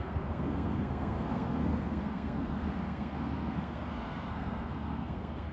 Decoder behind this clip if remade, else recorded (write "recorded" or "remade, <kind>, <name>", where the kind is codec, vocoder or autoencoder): remade, codec, SNAC